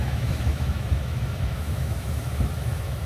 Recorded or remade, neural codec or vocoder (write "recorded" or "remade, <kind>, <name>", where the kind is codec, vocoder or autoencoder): remade, autoencoder, DAC-VAE